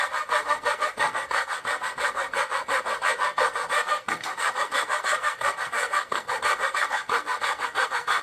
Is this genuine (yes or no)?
no